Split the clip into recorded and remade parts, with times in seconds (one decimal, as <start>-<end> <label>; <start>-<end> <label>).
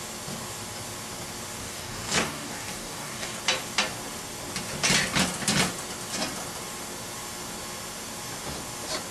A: 0.0-1.6 recorded; 1.6-3.4 remade; 3.4-9.1 recorded